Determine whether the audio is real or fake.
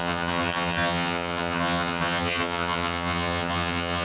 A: fake